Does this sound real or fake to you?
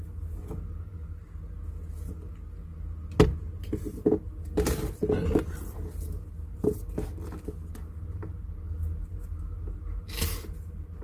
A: real